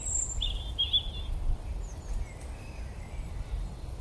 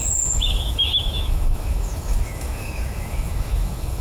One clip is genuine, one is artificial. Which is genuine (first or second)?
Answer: first